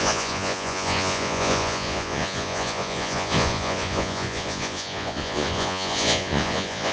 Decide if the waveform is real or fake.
fake